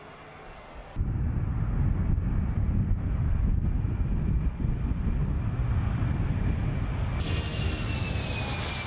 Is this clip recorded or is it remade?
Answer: recorded